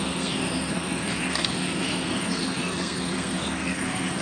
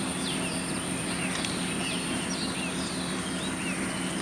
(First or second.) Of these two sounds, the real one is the second